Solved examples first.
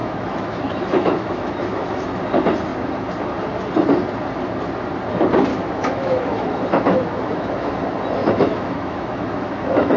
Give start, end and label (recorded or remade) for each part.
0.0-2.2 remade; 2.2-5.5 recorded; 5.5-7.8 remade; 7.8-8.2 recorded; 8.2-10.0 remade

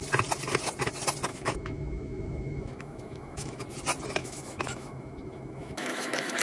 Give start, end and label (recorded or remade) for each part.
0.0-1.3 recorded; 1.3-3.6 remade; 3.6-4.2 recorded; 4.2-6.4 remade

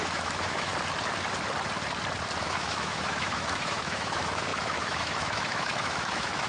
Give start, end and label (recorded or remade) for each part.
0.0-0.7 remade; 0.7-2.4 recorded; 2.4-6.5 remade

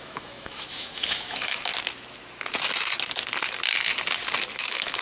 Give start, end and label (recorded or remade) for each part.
0.0-1.7 remade; 1.7-4.5 recorded; 4.5-5.0 remade

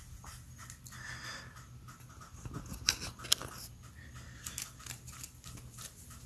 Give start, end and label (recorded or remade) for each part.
0.0-6.3 recorded